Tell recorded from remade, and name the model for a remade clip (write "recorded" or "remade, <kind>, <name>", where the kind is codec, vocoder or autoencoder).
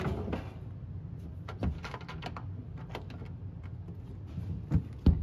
recorded